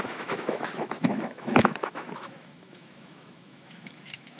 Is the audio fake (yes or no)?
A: yes